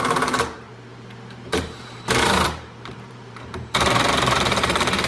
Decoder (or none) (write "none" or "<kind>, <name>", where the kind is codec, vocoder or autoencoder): vocoder, BigVGAN v2